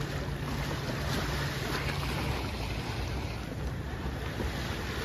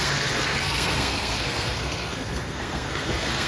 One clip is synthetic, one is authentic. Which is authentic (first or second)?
first